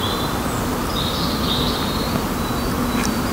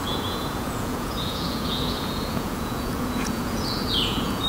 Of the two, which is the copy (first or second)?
second